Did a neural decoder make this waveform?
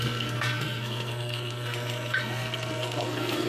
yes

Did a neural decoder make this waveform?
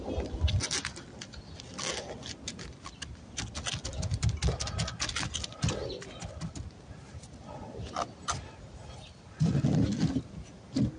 no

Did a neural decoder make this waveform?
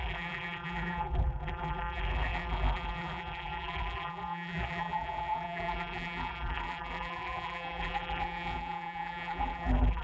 yes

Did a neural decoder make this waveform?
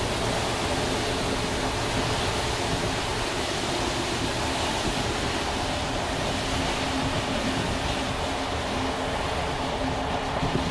no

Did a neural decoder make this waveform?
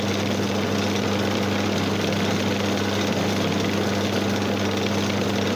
no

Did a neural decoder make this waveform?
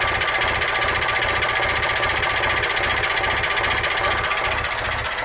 no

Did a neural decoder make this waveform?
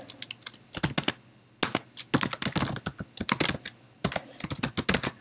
no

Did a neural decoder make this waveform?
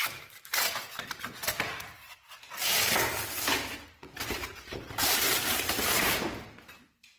yes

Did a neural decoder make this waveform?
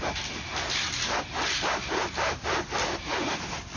no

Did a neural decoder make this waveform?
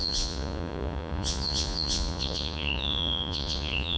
yes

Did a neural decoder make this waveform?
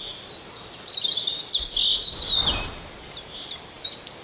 no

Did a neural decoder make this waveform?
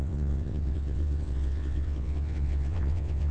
yes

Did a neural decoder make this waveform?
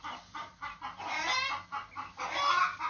no